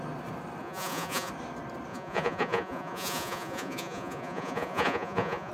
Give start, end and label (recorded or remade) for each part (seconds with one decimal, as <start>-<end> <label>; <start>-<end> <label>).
0.0-0.6 recorded; 0.6-1.3 remade; 1.3-1.9 recorded; 1.9-5.5 remade